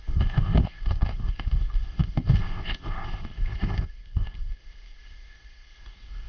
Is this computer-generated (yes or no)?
yes